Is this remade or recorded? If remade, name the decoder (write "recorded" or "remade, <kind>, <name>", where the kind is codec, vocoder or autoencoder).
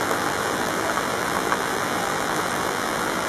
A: remade, vocoder, BigVGAN v2